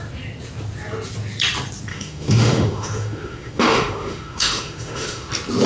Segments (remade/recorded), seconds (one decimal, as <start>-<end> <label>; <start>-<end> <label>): 0.0-1.9 recorded; 1.9-5.3 remade; 5.3-5.7 recorded